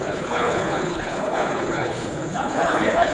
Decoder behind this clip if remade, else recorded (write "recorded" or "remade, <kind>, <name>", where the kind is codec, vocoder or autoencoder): remade, codec, HILCodec